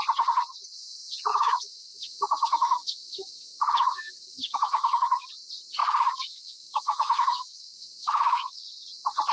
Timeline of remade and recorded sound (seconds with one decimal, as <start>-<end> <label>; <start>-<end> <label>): 0.0-1.3 recorded; 1.3-5.3 remade; 5.3-5.8 recorded; 5.8-8.6 remade; 8.6-9.3 recorded